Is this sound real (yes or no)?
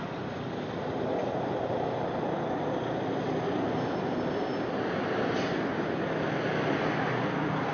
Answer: yes